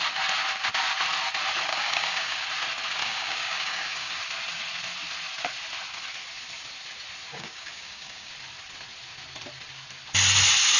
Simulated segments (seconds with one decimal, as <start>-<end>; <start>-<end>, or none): 1.7-2.4; 3.0-4.1; 7.3-8.3